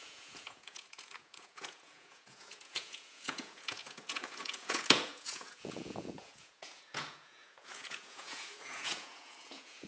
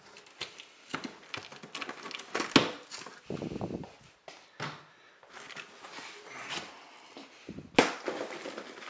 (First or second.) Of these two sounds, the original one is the second